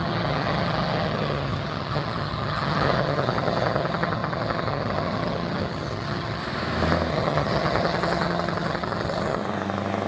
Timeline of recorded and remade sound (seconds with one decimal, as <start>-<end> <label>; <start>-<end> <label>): 0.0-6.4 remade; 6.4-7.1 recorded; 7.1-9.4 remade; 9.4-10.1 recorded

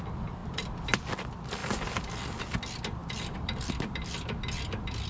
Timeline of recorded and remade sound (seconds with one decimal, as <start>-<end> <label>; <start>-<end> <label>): 0.0-1.6 recorded; 1.6-2.4 remade; 2.4-3.0 recorded; 3.0-3.7 remade; 3.7-5.1 recorded

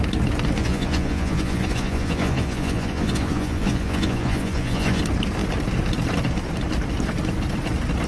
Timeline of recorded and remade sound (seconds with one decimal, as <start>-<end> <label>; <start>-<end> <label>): 0.0-0.6 recorded; 0.6-5.0 remade; 5.0-8.1 recorded

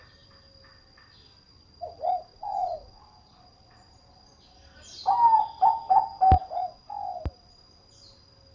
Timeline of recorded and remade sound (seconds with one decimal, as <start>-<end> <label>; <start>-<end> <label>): 0.0-2.3 recorded; 2.3-3.0 remade; 3.0-8.5 recorded

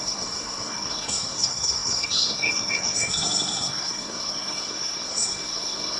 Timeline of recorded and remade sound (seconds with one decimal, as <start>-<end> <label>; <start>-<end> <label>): 0.0-6.0 remade

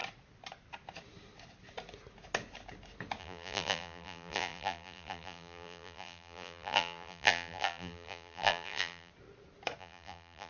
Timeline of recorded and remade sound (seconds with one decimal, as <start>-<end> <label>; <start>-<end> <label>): 0.0-3.2 recorded; 3.2-9.1 remade; 9.1-9.8 recorded; 9.8-10.5 remade

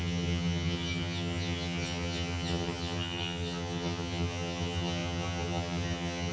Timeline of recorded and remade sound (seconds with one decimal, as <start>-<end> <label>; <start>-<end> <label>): 0.0-6.3 remade

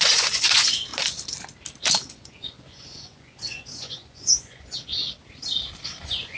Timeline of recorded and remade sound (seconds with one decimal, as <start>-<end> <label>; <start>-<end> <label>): 0.0-0.9 remade; 0.9-2.1 recorded; 2.1-5.0 remade; 5.0-6.0 recorded; 6.0-6.4 remade